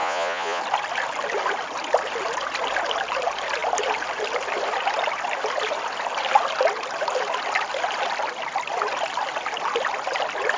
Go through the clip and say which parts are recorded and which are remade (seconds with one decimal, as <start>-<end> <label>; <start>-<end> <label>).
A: 0.0-0.6 remade; 0.6-10.6 recorded